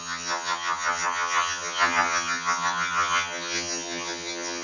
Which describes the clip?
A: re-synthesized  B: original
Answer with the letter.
A